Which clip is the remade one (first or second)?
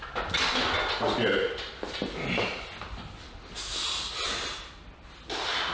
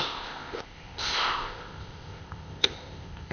second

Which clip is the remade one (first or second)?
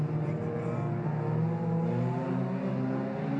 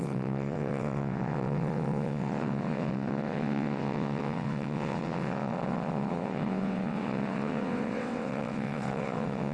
second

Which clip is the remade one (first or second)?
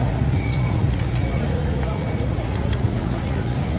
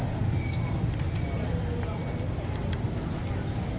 first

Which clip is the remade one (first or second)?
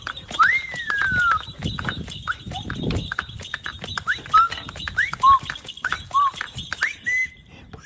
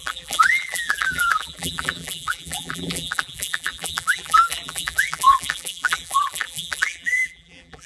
second